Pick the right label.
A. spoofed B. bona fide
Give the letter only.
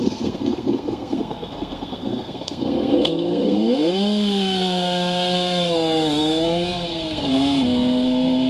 A